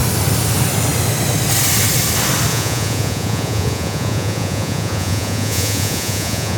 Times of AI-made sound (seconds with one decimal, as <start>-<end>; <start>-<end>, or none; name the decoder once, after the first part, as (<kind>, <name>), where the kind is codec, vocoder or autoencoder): 2.5-6.6 (vocoder, Vocos)